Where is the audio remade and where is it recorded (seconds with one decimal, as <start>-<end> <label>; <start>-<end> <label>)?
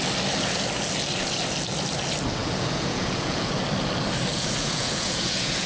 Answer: 0.0-2.4 recorded; 2.4-3.6 remade; 3.6-4.3 recorded; 4.3-5.7 remade